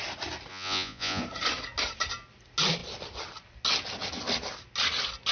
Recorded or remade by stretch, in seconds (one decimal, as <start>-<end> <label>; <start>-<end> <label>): 0.0-0.5 recorded; 0.5-1.2 remade; 1.2-5.3 recorded